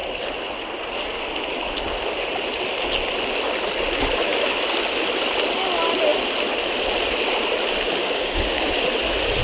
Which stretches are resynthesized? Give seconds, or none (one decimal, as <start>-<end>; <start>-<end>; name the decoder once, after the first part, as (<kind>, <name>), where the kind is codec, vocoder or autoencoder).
8.0-8.7 (codec, DAC)